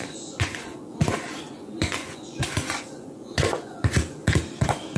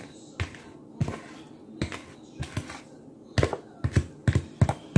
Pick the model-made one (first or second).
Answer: first